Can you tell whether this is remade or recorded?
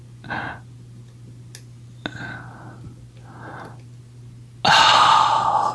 recorded